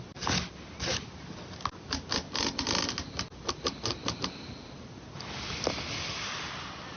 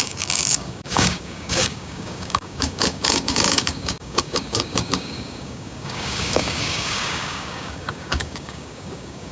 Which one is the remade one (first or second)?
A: second